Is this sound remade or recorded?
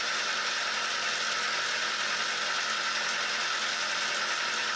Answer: recorded